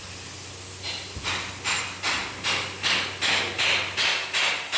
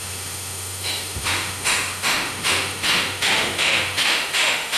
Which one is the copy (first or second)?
second